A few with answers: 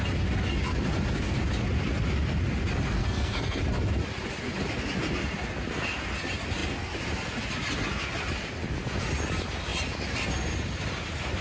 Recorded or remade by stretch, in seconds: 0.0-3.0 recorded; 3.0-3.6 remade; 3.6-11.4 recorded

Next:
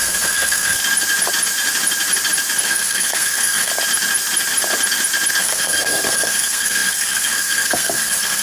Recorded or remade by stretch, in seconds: 0.0-0.8 remade; 0.8-2.6 recorded; 2.6-3.7 remade; 3.7-5.4 recorded; 5.4-8.4 remade

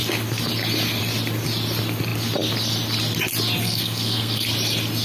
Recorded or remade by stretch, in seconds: 0.0-3.6 recorded; 3.6-4.4 remade; 4.4-5.0 recorded

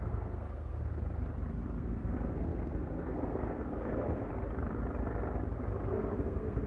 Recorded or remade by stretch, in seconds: 0.0-0.9 remade; 0.9-1.8 recorded; 1.8-4.3 remade; 4.3-5.9 recorded; 5.9-6.7 remade

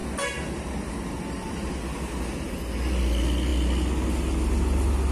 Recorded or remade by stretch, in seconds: 0.0-5.1 recorded